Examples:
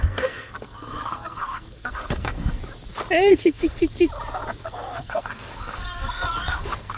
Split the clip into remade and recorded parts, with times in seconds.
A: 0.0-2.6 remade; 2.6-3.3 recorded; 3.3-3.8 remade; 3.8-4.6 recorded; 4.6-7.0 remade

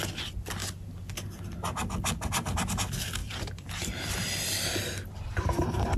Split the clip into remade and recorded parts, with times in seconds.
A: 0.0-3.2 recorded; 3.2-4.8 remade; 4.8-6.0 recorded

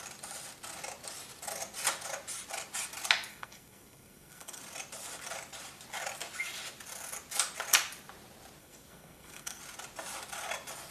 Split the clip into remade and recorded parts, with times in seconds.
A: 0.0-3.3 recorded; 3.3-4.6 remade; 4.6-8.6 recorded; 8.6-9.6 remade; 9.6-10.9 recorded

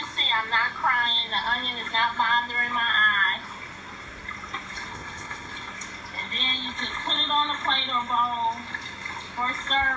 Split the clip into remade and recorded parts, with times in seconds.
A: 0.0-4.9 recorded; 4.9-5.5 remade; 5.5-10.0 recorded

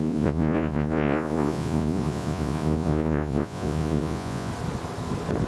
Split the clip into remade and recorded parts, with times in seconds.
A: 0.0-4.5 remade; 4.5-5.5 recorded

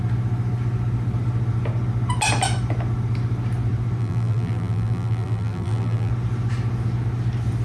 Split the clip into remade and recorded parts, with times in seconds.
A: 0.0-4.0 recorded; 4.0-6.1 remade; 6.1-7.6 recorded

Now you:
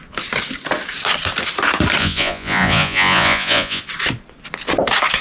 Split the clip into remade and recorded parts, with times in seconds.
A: 0.0-2.0 recorded; 2.0-3.8 remade; 3.8-5.2 recorded

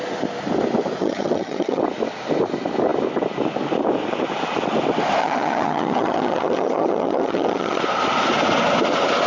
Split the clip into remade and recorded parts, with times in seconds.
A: 0.0-1.0 recorded; 1.0-1.8 remade; 1.8-5.2 recorded; 5.2-7.8 remade; 7.8-9.3 recorded